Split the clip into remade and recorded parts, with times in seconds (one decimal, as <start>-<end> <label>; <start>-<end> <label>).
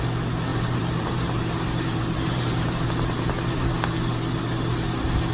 0.0-0.5 recorded; 0.5-3.7 remade; 3.7-5.3 recorded